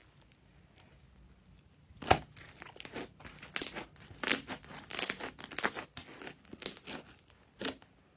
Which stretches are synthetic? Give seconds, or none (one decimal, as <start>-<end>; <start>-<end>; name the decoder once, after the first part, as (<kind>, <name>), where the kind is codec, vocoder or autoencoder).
none